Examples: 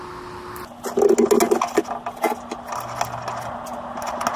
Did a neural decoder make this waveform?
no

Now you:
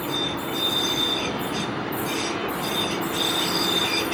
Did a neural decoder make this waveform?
no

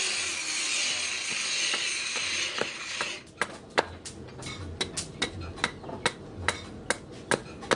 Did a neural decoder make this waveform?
no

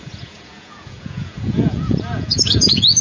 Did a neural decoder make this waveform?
yes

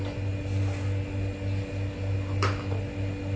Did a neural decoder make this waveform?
no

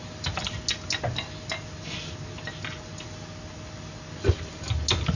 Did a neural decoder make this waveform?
no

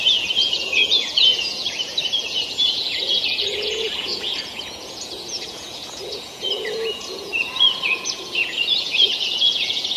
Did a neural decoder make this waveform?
yes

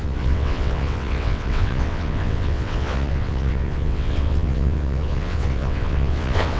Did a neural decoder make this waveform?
yes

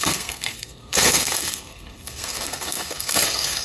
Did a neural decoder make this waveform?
yes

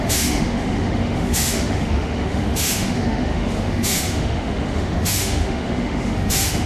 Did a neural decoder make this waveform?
yes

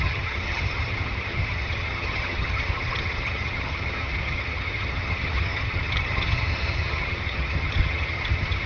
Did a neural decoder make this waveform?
yes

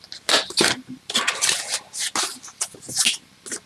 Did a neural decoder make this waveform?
no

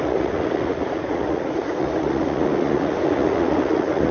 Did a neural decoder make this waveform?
yes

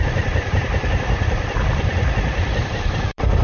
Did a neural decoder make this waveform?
yes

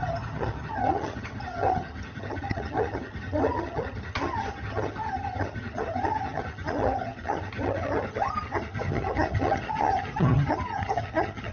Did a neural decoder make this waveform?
yes